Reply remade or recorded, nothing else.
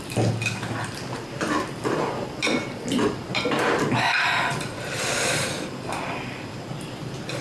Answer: remade